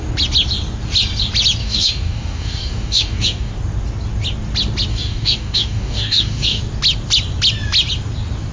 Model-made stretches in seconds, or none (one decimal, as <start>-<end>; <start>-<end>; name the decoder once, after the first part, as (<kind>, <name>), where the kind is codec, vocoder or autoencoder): 1.6-3.5 (codec, DAC); 4.9-6.6